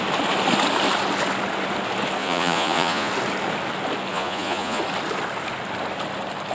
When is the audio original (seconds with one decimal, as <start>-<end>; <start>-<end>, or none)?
0.0-2.2; 3.1-4.1; 4.8-6.5